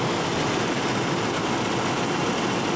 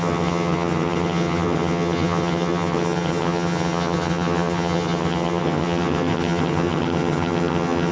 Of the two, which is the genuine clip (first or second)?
first